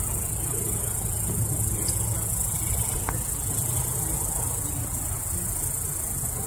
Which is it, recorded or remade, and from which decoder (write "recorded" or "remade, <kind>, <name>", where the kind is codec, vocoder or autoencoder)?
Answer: recorded